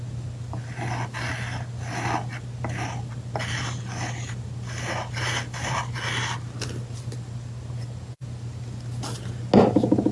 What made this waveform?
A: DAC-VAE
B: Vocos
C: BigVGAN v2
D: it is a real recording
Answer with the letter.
D